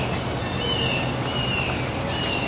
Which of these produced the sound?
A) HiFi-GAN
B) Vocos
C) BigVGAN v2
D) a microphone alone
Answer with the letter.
D